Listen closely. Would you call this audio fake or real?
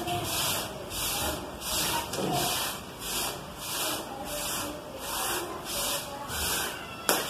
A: real